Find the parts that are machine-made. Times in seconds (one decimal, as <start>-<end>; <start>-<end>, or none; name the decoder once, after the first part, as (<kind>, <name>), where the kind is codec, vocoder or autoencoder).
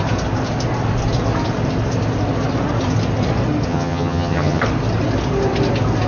3.7-4.6 (vocoder, HiFi-GAN)